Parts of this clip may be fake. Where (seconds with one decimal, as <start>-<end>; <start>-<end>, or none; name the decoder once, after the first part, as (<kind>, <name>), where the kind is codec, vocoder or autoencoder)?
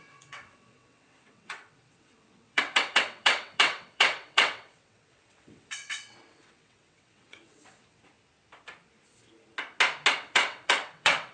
0.0-8.0 (vocoder, WaveNeXt); 10.1-11.3